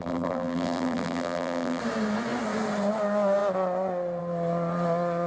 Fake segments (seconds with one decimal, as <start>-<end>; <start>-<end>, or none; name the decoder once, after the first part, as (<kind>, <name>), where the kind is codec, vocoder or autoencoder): 0.0-1.8 (vocoder, BigVGAN v2)